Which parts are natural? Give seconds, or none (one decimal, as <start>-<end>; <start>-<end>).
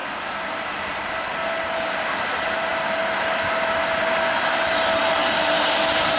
0.0-6.2